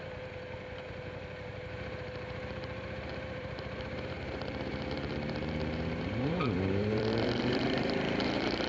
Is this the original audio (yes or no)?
no